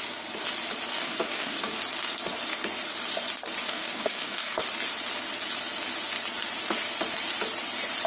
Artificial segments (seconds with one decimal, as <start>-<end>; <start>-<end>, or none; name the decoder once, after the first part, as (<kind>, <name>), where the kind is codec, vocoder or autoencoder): 0.9-1.8 (codec, DAC); 3.6-4.6